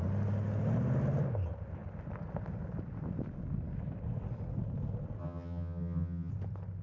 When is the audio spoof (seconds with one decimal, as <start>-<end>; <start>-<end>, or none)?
5.2-6.3